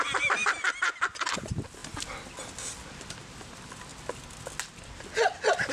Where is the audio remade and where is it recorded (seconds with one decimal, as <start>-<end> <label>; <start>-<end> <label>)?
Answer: 0.0-5.7 recorded